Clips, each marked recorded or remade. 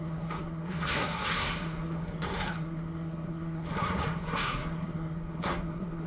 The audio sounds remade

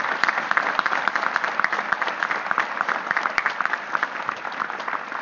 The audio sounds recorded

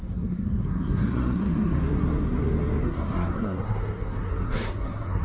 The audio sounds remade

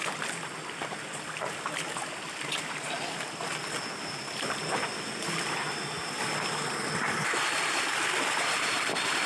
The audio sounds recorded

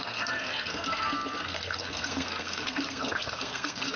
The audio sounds remade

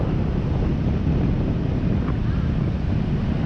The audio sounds recorded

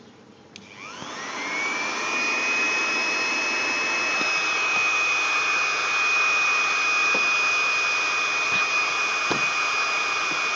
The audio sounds recorded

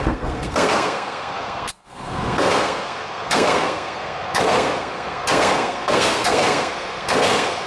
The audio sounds remade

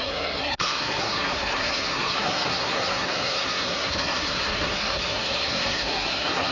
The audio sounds remade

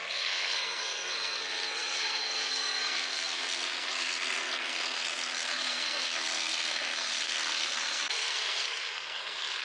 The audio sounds remade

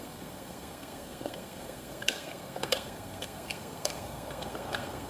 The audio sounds remade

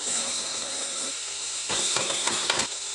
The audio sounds remade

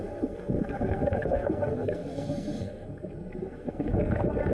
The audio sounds remade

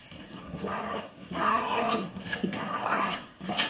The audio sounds remade